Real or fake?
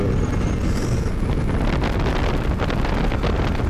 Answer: real